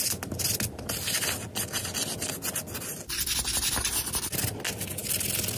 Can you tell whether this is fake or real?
real